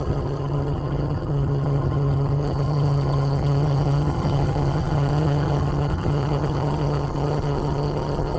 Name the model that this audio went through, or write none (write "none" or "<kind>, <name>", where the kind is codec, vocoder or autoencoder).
vocoder, HiFi-GAN